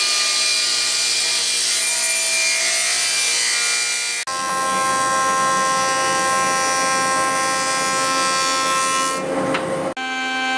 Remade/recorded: recorded